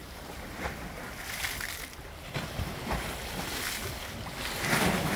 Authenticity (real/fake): real